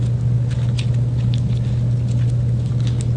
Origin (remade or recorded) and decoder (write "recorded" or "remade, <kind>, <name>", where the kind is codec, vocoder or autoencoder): recorded